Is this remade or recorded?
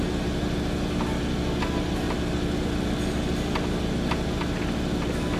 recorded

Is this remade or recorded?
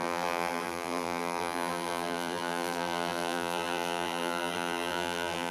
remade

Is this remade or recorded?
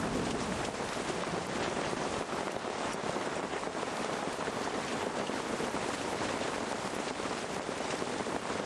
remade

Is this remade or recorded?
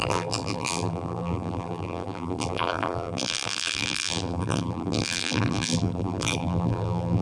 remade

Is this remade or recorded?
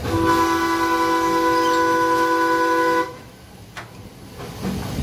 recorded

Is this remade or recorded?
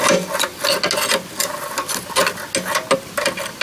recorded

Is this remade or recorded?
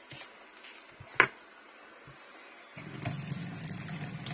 recorded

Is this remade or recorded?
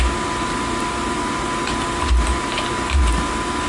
remade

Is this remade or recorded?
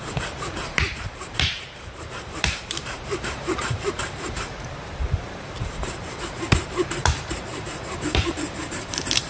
remade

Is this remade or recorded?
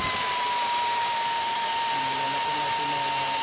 remade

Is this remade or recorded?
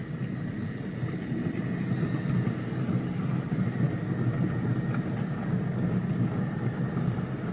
recorded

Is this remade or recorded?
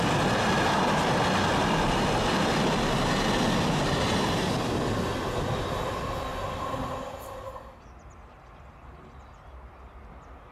recorded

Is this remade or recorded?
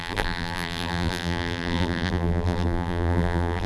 remade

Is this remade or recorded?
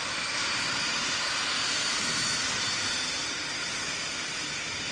remade